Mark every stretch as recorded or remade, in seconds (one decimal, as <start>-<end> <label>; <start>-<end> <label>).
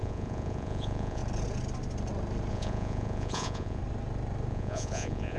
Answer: 0.0-1.2 remade; 1.2-2.5 recorded; 2.5-3.8 remade; 3.8-4.5 recorded; 4.5-5.4 remade